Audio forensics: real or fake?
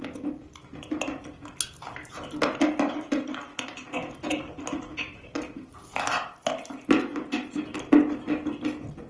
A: real